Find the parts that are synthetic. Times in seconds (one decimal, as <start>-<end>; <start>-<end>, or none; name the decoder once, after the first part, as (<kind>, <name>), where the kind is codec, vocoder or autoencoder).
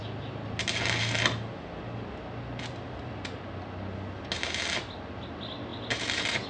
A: none